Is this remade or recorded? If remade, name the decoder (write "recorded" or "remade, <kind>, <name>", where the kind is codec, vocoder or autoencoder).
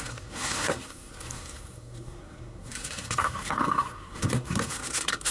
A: remade, codec, SNAC